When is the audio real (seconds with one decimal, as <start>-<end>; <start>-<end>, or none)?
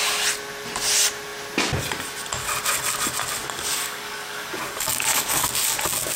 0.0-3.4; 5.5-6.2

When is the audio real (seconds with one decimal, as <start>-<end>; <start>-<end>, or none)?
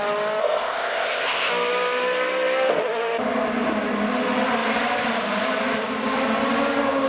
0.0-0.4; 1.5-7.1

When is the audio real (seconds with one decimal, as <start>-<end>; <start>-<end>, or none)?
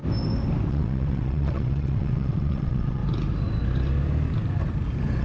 0.0-0.7; 3.0-5.2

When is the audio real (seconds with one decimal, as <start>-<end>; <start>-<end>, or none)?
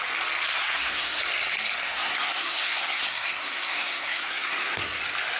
0.0-0.5; 1.2-1.8; 5.0-5.4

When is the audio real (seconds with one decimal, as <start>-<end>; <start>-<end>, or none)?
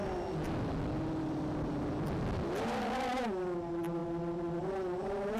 0.0-5.4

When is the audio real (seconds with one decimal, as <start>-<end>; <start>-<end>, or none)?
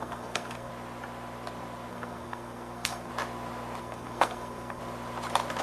0.7-1.9; 3.1-3.8; 4.8-5.6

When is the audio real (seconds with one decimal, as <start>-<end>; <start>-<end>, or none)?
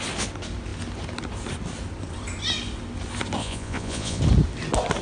0.0-3.4; 4.2-5.0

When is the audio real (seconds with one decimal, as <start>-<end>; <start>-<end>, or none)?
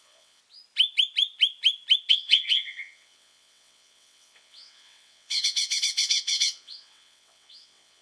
0.4-2.1